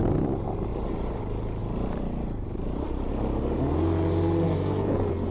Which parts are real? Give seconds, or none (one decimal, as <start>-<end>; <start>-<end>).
0.0-0.7; 1.2-1.6; 3.1-5.3